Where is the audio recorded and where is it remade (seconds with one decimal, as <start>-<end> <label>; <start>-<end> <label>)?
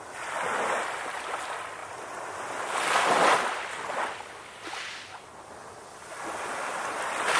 0.0-7.4 recorded